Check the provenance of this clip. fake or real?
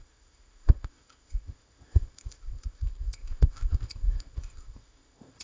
fake